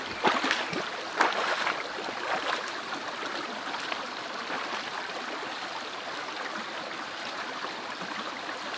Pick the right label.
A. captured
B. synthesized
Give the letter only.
A